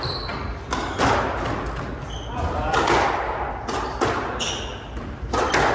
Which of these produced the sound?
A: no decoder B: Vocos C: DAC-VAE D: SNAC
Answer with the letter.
A